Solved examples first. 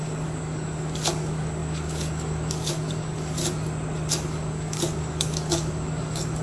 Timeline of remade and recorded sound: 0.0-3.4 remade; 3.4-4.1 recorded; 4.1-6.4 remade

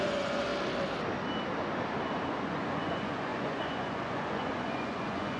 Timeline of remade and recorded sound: 0.0-0.5 remade; 0.5-2.4 recorded; 2.4-5.4 remade